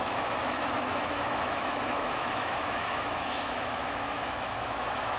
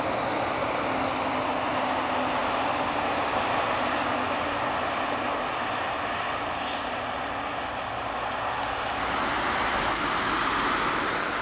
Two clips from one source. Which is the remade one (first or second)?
first